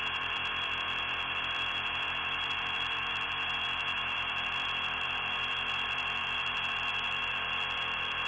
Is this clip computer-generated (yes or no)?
no